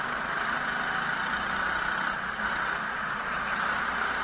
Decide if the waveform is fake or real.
real